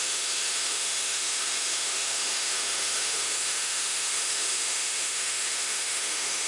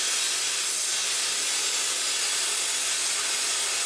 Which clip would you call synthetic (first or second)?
first